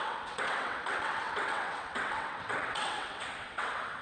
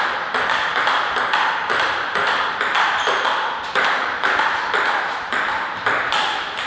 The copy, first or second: first